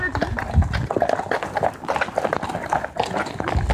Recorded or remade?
recorded